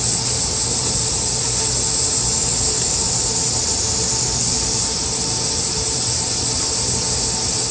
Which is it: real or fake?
real